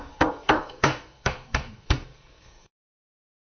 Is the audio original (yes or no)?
no